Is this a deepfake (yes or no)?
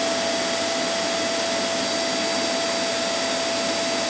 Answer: no